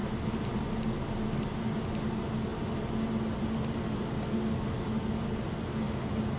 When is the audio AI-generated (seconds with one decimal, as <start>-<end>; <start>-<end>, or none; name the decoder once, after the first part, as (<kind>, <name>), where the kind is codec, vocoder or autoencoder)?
none